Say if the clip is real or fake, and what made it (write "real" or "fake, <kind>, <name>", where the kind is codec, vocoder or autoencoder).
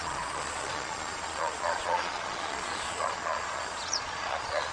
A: fake, vocoder, Vocos